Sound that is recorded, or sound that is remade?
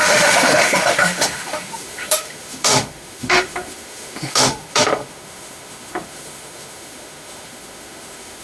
remade